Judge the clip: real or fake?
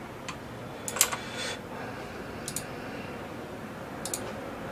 real